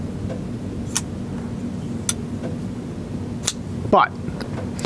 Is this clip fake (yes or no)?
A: no